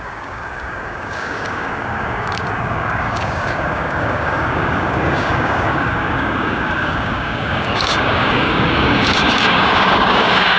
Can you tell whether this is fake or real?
fake